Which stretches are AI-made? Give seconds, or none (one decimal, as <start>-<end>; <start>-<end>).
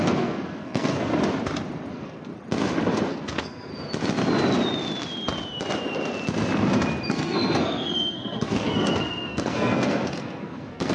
0.0-1.1; 1.9-2.3; 3.1-3.7; 7.1-10.9